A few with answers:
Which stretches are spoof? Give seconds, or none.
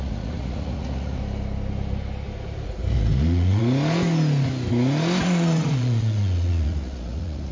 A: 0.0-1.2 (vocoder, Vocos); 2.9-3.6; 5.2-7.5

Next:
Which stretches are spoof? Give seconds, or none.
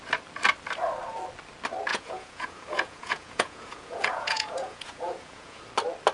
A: 1.9-5.6 (vocoder, Vocos)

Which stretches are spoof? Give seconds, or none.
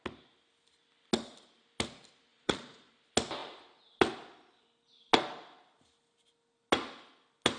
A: 2.3-2.9 (vocoder, Vocos)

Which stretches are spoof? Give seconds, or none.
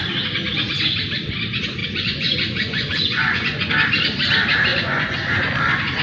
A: 1.8-3.7 (vocoder, Vocos); 4.7-5.3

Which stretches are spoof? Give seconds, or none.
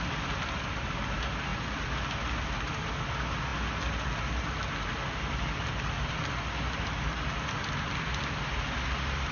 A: none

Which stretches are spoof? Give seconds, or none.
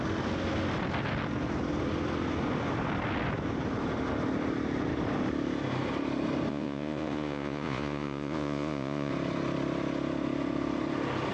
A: 6.5-9.1 (vocoder, Vocos)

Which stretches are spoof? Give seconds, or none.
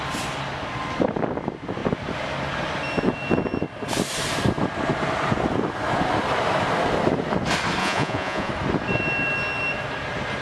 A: 7.8-8.5 (vocoder, Vocos)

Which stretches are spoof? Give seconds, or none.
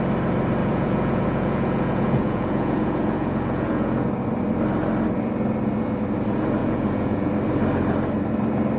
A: 0.6-4.1 (vocoder, Vocos); 6.6-7.3